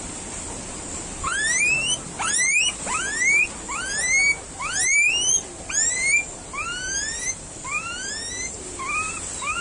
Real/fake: real